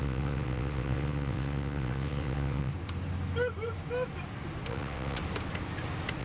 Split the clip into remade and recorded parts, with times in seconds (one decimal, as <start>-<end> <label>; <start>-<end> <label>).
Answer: 0.0-2.7 remade; 2.7-4.7 recorded; 4.7-5.2 remade; 5.2-6.2 recorded